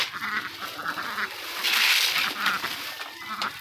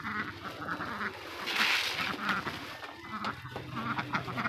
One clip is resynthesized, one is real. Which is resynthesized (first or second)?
first